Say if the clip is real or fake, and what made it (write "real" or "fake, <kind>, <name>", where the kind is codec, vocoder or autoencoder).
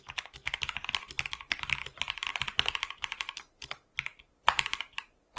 real